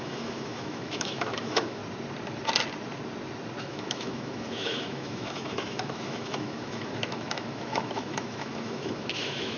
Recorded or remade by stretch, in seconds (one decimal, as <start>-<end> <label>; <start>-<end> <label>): 0.0-1.8 remade; 1.8-3.6 recorded; 3.6-9.6 remade